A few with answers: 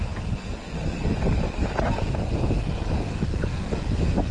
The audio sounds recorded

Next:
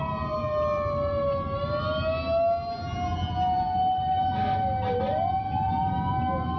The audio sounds recorded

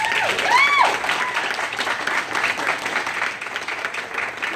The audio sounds recorded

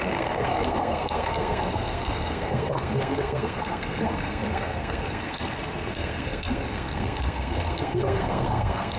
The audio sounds remade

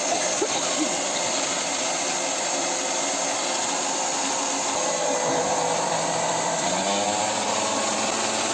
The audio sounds remade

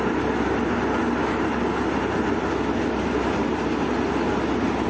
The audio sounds recorded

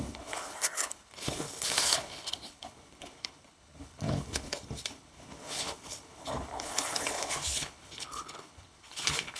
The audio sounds remade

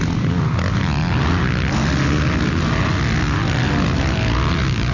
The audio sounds recorded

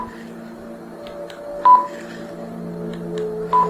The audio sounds recorded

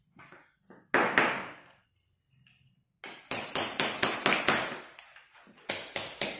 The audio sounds recorded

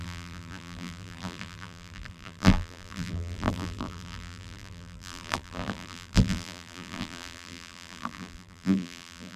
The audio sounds remade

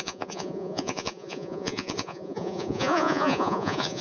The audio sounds remade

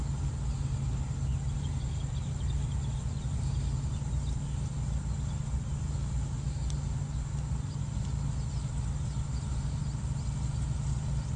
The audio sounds recorded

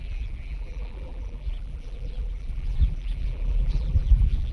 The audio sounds remade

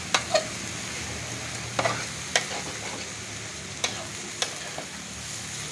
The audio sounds recorded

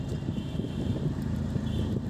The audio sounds remade